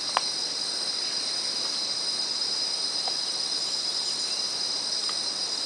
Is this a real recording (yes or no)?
yes